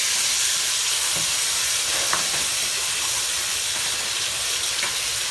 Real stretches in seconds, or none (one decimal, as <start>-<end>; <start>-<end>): 0.0-5.3